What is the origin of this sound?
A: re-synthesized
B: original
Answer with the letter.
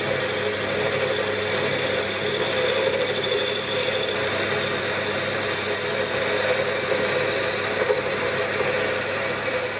B